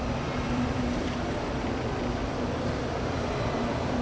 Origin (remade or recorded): remade